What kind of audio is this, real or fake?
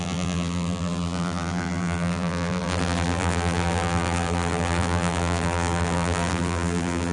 fake